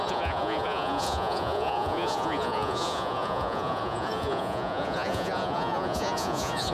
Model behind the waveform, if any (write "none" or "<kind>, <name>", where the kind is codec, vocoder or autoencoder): vocoder, Vocos